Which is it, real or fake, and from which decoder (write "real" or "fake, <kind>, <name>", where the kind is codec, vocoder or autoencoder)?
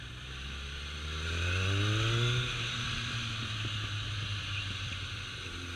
real